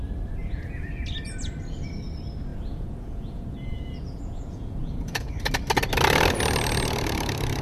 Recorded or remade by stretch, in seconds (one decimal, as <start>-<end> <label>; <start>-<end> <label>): 0.0-0.4 recorded; 0.4-0.9 remade; 0.9-2.5 recorded; 2.5-5.3 remade; 5.3-7.6 recorded